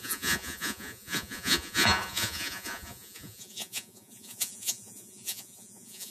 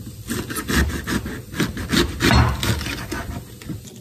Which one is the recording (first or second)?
second